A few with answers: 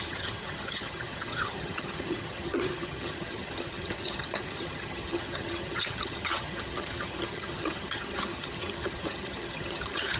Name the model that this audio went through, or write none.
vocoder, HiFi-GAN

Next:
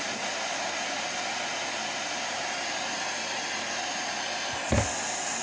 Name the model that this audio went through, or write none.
none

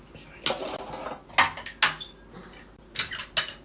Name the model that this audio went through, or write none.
none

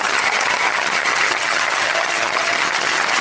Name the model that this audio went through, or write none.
vocoder, HiFi-GAN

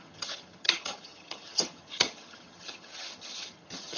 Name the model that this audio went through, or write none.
vocoder, HiFi-GAN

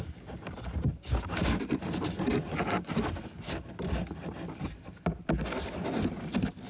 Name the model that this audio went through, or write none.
none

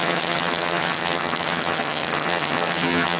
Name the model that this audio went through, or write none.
vocoder, HiFi-GAN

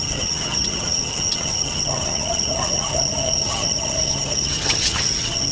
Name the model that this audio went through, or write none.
vocoder, HiFi-GAN